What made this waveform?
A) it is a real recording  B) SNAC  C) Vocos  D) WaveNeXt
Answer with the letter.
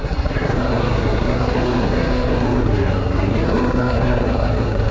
B